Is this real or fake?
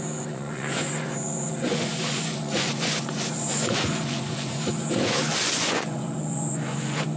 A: fake